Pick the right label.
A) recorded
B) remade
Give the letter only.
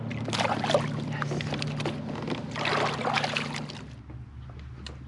A